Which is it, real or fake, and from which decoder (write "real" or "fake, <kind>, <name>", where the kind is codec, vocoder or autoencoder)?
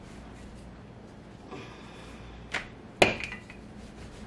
real